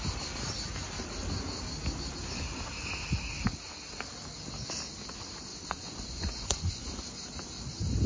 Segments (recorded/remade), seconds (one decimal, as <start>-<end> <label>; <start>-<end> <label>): 0.0-5.5 recorded; 5.5-6.9 remade; 6.9-8.1 recorded